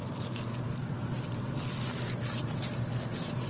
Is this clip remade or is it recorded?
recorded